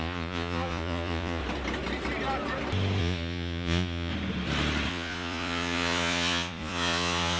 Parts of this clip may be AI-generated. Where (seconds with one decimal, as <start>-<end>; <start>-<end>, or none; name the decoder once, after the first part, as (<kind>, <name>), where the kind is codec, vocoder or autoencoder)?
0.0-1.4 (vocoder, Vocos); 3.0-4.1; 4.9-7.4

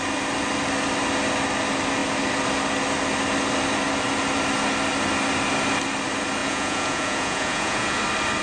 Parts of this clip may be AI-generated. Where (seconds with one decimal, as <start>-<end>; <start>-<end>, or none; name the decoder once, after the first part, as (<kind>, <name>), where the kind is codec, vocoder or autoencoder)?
6.4-8.0 (vocoder, Vocos)

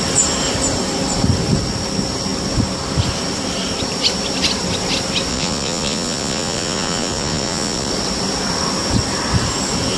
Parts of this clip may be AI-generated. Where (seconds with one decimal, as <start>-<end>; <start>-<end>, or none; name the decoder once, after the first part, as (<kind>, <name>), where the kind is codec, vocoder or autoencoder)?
5.3-7.9 (vocoder, Vocos)

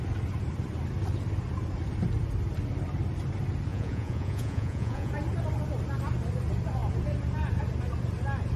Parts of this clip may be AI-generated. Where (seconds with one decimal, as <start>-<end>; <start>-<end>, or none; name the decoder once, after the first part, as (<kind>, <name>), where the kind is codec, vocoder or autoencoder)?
3.7-5.1 (vocoder, Vocos)

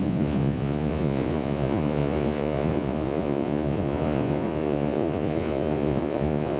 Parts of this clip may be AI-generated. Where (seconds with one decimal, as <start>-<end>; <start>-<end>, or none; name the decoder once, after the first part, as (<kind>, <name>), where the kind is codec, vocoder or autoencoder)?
0.0-6.6 (vocoder, Vocos)

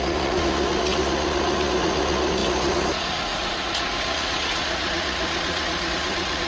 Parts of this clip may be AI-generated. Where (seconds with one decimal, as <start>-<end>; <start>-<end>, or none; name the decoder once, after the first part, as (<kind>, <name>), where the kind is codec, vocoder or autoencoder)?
0.0-6.5 (vocoder, Vocos)

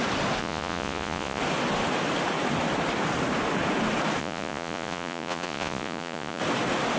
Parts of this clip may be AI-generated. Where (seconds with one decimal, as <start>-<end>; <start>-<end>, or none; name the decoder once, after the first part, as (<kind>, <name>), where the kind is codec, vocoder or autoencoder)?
0.4-1.4 (vocoder, Vocos); 4.2-6.4